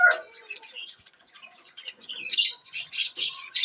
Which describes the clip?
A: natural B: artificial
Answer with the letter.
B